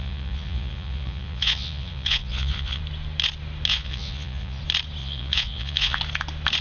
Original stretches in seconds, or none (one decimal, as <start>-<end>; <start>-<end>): 2.8-3.7; 4.6-5.0; 6.0-6.6

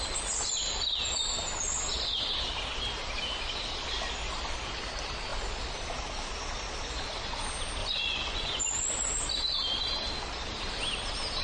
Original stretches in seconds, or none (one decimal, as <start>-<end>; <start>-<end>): 0.0-7.8; 8.6-11.4